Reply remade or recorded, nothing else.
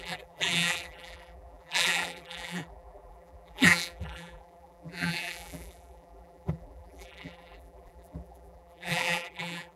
remade